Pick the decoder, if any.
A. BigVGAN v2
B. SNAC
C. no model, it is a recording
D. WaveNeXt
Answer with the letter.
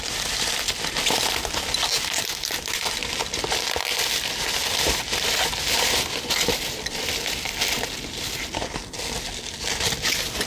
A